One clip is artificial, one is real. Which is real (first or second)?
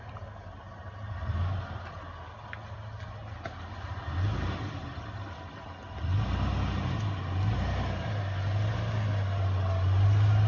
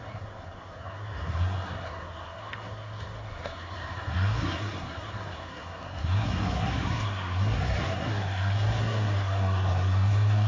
first